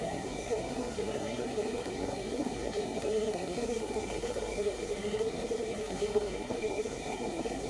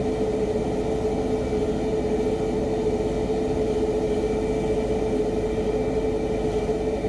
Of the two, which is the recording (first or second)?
second